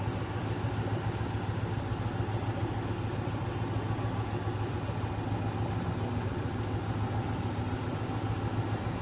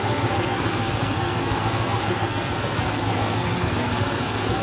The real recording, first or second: first